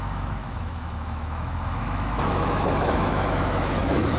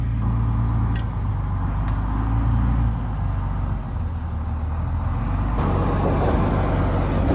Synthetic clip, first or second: first